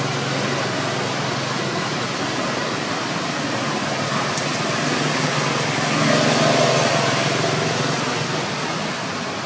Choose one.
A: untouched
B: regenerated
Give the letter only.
A